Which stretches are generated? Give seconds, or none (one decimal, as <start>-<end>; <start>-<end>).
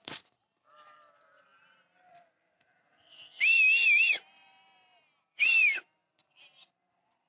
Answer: 0.0-7.3